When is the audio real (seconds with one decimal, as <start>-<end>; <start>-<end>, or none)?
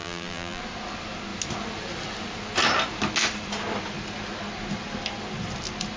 0.6-6.0